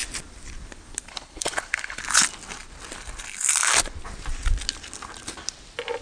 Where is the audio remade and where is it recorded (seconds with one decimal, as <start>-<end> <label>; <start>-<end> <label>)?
0.0-1.1 recorded; 1.1-2.0 remade; 2.0-6.0 recorded

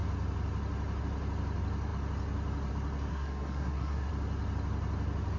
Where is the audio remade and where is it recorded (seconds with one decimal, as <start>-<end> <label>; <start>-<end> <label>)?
0.0-3.1 recorded; 3.1-4.1 remade; 4.1-5.4 recorded